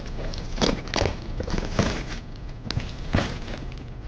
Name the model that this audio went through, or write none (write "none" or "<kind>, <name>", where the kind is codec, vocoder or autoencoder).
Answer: none